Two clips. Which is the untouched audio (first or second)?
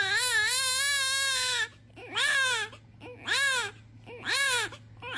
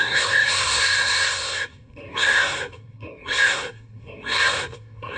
first